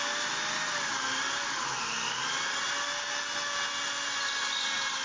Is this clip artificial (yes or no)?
no